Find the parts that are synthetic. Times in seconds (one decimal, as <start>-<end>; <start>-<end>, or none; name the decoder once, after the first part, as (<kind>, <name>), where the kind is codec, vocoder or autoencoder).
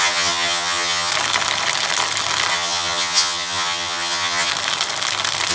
0.0-1.1 (vocoder, HiFi-GAN); 2.5-4.5